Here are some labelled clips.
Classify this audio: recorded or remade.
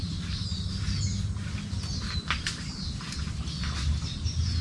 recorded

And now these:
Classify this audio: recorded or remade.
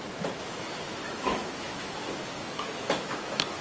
remade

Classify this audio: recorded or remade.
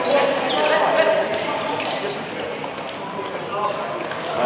recorded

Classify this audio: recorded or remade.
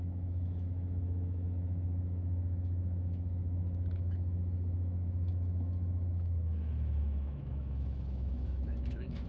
remade